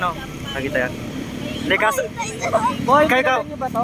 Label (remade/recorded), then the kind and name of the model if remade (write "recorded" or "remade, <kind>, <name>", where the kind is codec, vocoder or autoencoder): remade, vocoder, BigVGAN v2